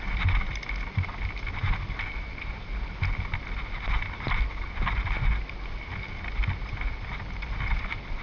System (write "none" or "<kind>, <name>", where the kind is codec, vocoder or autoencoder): none